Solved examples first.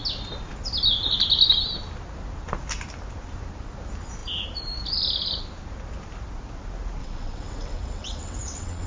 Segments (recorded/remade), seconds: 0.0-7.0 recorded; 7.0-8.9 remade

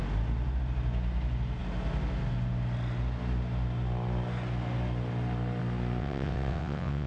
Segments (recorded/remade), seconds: 0.0-6.0 recorded; 6.0-7.1 remade

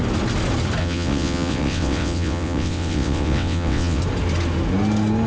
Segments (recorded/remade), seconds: 0.0-0.8 recorded; 0.8-4.0 remade; 4.0-5.3 recorded

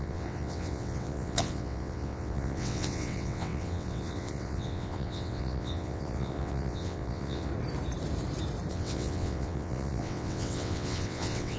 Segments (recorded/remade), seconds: 0.0-7.5 remade; 7.5-8.7 recorded; 8.7-11.6 remade

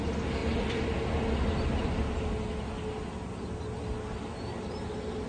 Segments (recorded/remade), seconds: 0.0-5.3 recorded

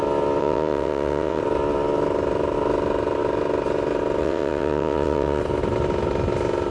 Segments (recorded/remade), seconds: 0.0-0.4 recorded; 0.4-1.4 remade; 1.4-4.2 recorded; 4.2-5.4 remade; 5.4-6.7 recorded

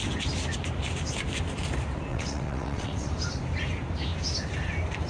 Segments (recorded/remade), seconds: 0.0-2.1 recorded; 2.1-3.1 remade; 3.1-5.1 recorded

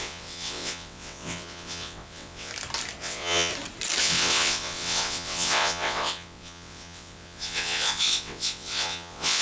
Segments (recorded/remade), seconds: 0.0-2.5 remade; 2.5-3.0 recorded; 3.0-3.5 remade; 3.5-4.0 recorded; 4.0-9.4 remade